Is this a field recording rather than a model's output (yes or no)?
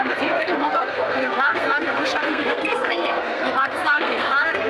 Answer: no